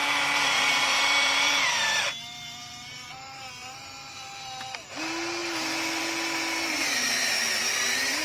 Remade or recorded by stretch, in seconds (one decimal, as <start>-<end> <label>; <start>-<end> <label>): 0.0-3.3 remade; 3.3-8.2 recorded